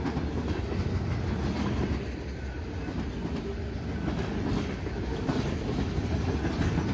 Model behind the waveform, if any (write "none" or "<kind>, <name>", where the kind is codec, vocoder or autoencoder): none